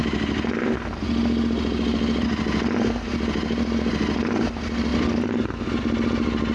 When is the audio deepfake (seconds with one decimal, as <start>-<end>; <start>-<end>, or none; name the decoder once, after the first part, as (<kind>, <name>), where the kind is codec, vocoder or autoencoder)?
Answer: none